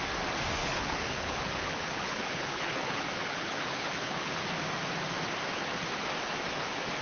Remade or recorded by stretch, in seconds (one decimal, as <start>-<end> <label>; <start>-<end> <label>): 0.0-0.6 recorded; 0.6-4.4 remade; 4.4-7.0 recorded